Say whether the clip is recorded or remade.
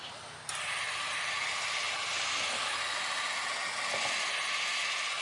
recorded